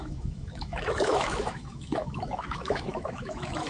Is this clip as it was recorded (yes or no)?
no